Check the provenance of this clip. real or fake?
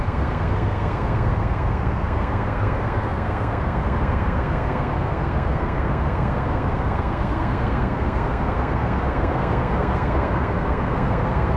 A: fake